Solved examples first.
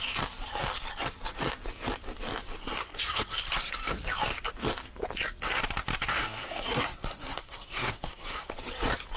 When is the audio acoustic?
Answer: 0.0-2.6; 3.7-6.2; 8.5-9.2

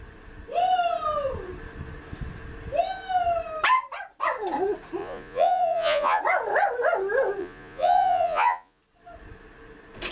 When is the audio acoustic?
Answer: 0.0-5.0; 6.2-7.4; 8.8-10.1

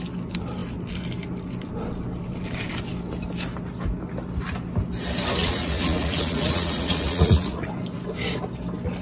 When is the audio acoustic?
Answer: 0.0-5.4; 7.7-9.0

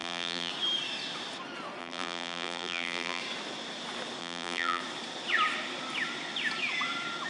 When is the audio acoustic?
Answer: 0.5-1.8; 3.2-4.2; 4.8-7.3

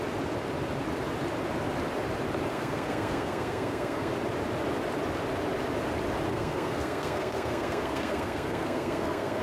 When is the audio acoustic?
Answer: 0.0-2.5; 4.1-6.3

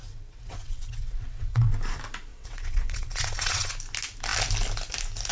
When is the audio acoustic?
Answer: 1.7-2.3; 3.7-5.3

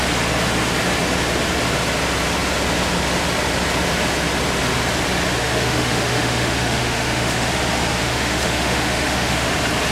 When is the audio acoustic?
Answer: 0.0-5.4; 7.5-8.0; 9.5-9.9

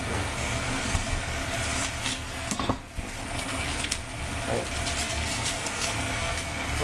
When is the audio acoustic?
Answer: 1.4-2.0; 4.0-5.0